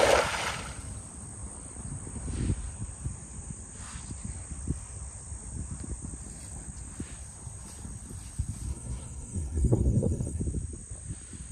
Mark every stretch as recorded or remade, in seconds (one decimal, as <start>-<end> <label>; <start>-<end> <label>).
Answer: 0.0-8.7 recorded; 8.7-10.4 remade; 10.4-11.5 recorded